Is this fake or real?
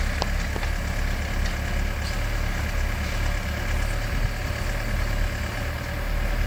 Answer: real